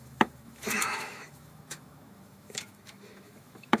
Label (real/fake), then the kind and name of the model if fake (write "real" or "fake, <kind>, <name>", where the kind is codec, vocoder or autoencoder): fake, autoencoder, DAC-VAE